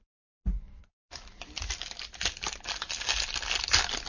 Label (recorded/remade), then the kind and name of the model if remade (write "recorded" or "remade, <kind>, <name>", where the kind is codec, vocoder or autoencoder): remade, vocoder, BigVGAN v2